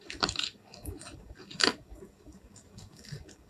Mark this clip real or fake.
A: fake